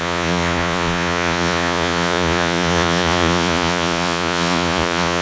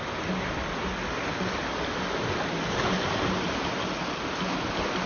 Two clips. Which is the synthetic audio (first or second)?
first